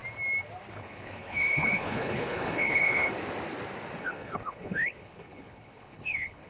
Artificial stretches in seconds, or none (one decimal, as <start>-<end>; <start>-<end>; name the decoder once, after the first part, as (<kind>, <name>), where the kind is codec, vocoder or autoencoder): 0.7-3.1 (codec, HILCodec); 4.0-6.5